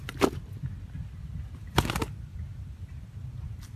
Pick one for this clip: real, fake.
real